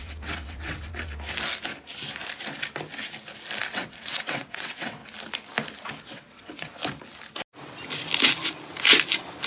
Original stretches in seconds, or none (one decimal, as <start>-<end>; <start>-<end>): 1.1-3.7; 5.0-6.0; 6.8-9.5